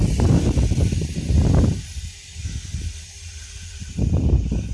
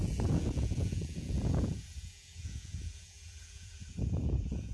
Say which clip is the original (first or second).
first